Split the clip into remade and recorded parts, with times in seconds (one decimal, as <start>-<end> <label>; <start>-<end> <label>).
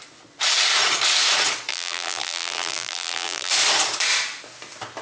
0.0-1.7 recorded; 1.7-3.5 remade; 3.5-5.0 recorded